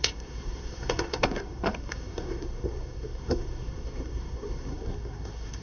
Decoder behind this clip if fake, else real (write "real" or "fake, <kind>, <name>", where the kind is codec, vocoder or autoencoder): fake, codec, SNAC